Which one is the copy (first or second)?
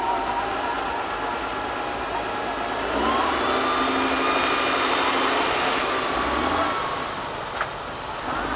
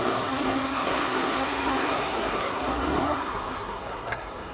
second